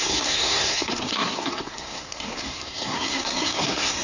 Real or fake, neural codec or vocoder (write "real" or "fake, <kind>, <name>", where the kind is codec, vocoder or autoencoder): fake, codec, SNAC